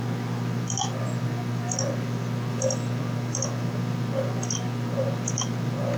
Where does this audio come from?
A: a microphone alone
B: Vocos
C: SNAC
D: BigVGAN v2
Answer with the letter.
A